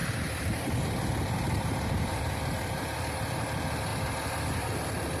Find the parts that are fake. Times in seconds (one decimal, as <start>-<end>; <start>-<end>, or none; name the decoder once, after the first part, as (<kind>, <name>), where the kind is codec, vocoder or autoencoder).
0.0-3.1 (vocoder, BigVGAN v2)